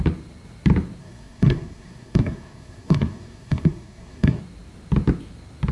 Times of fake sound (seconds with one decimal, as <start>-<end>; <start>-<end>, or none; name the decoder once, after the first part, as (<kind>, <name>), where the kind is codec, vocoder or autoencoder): 1.0-4.4 (codec, SNAC)